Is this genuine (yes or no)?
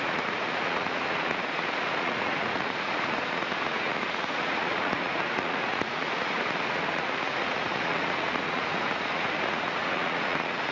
no